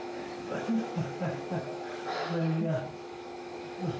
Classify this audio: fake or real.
fake